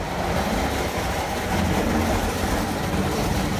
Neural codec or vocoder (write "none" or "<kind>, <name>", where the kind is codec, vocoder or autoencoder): none